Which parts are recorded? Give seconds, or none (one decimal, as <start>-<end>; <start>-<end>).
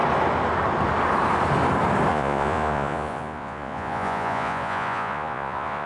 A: 0.0-2.1